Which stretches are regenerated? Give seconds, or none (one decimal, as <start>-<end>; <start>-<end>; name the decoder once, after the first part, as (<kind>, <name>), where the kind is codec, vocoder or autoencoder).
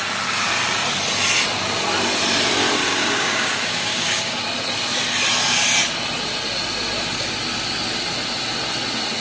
2.9-4.4 (codec, DAC)